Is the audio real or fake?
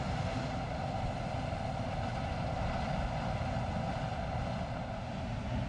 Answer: real